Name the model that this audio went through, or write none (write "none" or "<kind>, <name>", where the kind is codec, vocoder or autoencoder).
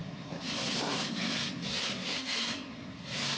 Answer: codec, SNAC